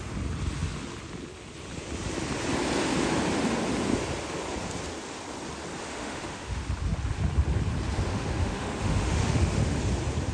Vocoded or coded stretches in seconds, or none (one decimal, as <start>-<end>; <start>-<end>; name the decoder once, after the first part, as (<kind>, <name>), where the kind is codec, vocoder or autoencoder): 5.8-6.6 (autoencoder, DAC-VAE); 8.1-9.8